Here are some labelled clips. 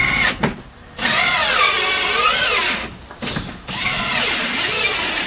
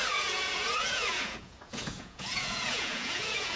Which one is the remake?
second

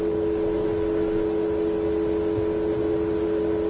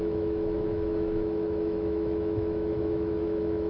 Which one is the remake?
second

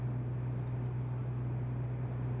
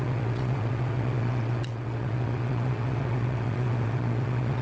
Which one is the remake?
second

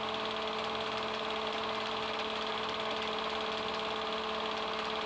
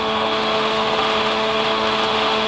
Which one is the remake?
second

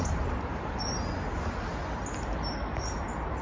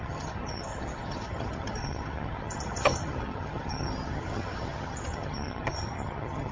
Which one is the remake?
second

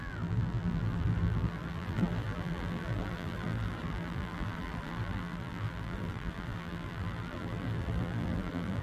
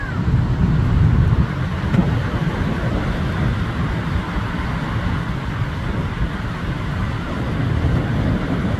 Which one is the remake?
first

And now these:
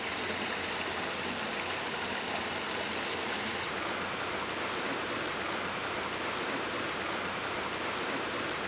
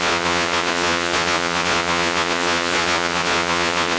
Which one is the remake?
second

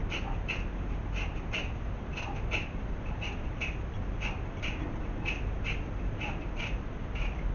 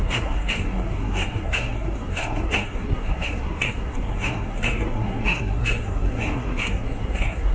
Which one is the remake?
second